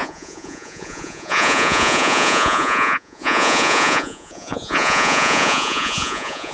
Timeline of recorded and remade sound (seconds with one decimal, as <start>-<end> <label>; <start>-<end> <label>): 0.0-6.5 remade